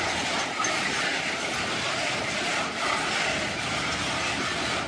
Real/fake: real